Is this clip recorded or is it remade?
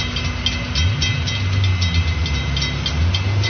recorded